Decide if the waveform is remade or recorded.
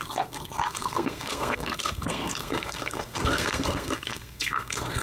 remade